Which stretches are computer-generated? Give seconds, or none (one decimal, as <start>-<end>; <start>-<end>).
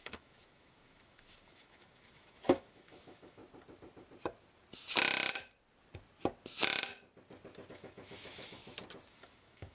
0.0-3.4; 7.7-8.6; 9.1-9.7